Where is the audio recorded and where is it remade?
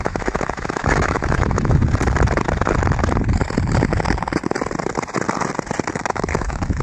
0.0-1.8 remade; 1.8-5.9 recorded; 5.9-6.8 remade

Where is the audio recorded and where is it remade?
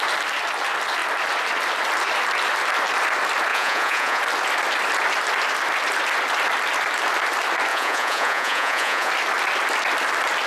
0.0-3.5 recorded; 3.5-4.2 remade; 4.2-7.7 recorded; 7.7-9.1 remade; 9.1-10.5 recorded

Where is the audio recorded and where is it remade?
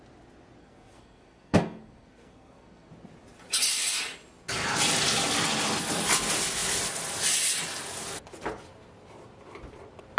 0.0-0.6 recorded; 0.6-2.9 remade; 2.9-10.2 recorded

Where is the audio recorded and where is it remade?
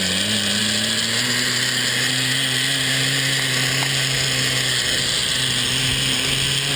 0.0-6.8 recorded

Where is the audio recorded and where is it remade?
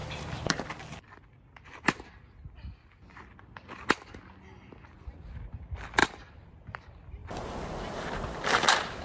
0.0-6.0 recorded; 6.0-6.5 remade; 6.5-9.0 recorded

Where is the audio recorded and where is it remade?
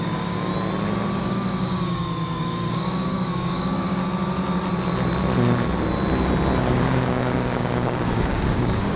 0.0-0.5 remade; 0.5-1.2 recorded; 1.2-4.0 remade; 4.0-6.6 recorded; 6.6-9.0 remade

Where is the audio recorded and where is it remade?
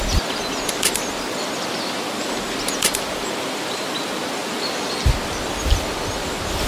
0.0-6.7 recorded